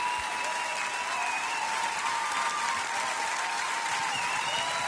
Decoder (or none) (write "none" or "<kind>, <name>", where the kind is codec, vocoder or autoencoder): none